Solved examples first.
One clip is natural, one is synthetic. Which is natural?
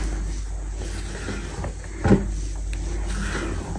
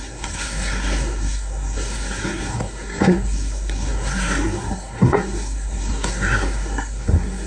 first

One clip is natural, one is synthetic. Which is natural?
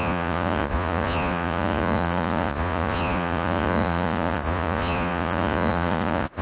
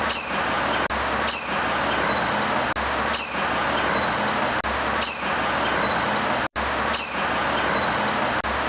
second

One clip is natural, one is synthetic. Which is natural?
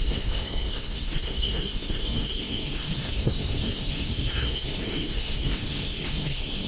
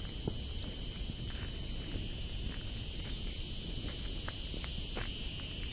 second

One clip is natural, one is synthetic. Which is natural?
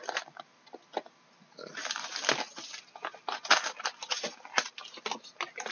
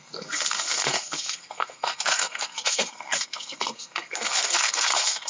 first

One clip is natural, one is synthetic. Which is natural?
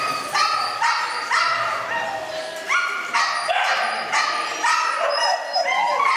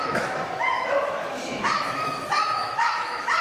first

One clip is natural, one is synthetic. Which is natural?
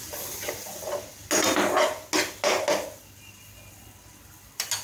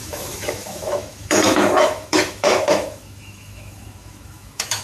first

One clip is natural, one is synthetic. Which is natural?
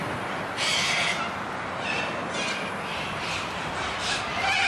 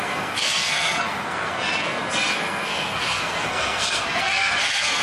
first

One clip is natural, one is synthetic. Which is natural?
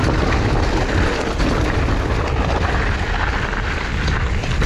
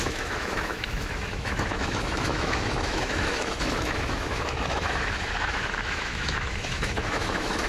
first